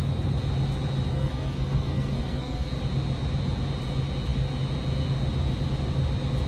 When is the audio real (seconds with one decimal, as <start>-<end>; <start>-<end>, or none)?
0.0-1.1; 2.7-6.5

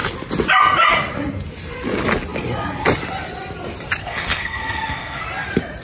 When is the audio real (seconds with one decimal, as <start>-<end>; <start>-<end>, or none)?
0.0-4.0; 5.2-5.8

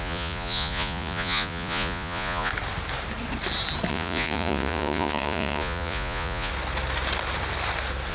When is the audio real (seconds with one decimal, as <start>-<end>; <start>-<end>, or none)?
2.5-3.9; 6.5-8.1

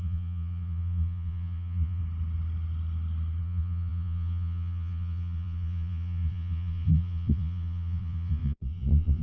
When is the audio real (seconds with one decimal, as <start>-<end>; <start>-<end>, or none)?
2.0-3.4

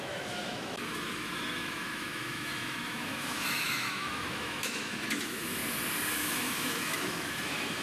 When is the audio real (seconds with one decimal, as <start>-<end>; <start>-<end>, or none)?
5.6-6.1

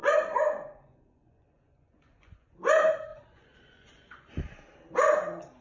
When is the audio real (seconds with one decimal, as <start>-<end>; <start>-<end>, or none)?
2.5-3.1; 4.4-5.6

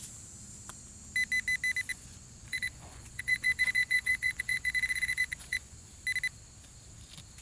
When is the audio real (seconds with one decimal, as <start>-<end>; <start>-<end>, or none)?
0.0-1.9; 5.9-7.4

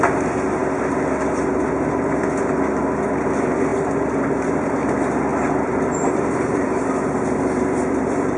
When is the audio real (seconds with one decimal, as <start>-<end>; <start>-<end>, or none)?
0.0-3.7; 4.7-5.3